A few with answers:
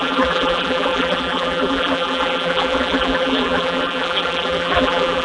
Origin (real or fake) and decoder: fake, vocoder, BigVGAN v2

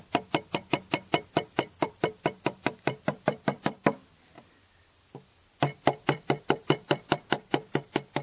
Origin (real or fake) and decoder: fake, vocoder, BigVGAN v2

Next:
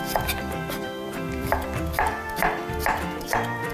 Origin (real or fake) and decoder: fake, vocoder, BigVGAN v2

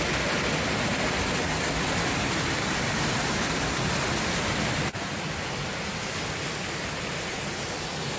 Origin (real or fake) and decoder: real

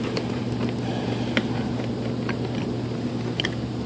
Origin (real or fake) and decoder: fake, vocoder, BigVGAN v2